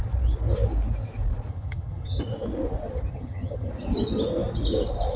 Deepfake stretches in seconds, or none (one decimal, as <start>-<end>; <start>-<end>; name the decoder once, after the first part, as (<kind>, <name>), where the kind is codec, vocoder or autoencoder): 1.5-2.2 (vocoder, HiFi-GAN); 3.1-3.7